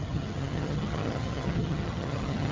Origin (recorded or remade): remade